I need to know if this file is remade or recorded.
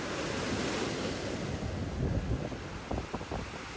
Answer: recorded